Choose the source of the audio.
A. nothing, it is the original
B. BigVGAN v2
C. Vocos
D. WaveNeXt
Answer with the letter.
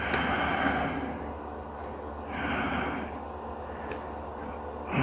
A